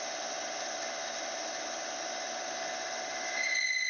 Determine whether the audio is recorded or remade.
recorded